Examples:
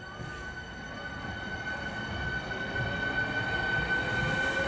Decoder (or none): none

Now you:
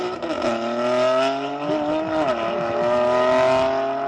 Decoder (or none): none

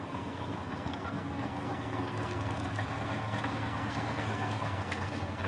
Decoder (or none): codec, SNAC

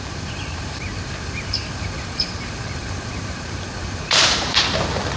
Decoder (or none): vocoder, BigVGAN v2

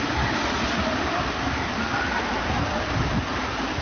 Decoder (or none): none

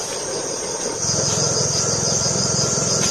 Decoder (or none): none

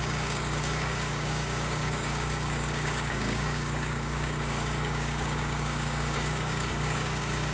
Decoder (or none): codec, DAC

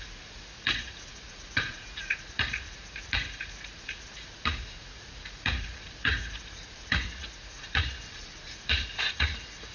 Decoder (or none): vocoder, Vocos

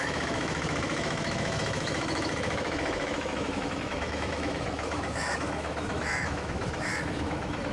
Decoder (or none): autoencoder, DAC-VAE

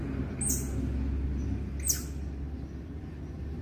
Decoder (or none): none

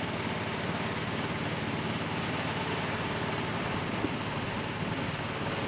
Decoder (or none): none